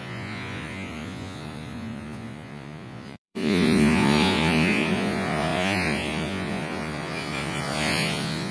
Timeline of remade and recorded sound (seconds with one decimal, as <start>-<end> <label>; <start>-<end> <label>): 0.0-8.5 remade